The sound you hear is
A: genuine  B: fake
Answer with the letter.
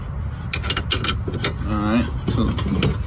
A